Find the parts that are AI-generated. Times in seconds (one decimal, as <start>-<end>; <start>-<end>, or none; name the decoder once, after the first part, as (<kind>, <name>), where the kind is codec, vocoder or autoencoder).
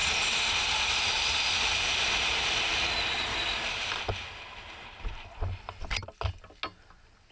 none